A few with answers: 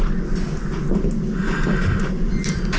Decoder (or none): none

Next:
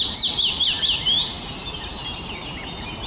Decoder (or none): none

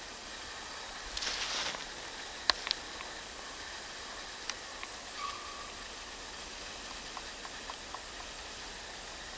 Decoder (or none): none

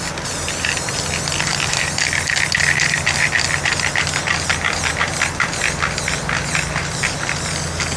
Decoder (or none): none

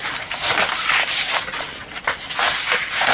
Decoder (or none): none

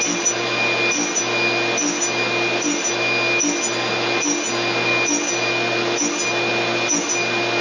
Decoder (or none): none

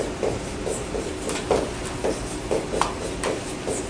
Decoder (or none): none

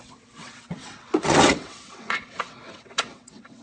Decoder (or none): vocoder, WaveNeXt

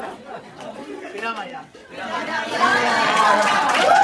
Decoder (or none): vocoder, WaveNeXt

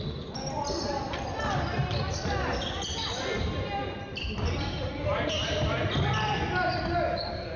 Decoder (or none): none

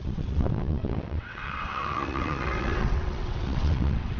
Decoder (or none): vocoder, WaveNeXt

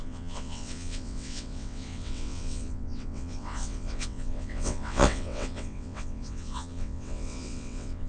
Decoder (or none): vocoder, WaveNeXt